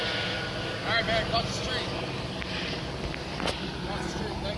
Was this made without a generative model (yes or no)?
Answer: yes